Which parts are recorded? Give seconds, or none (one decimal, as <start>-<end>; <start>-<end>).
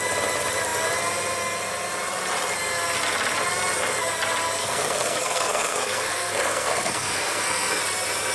0.0-4.6; 7.8-8.3